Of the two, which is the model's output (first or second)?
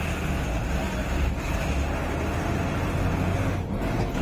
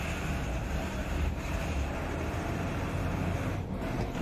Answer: second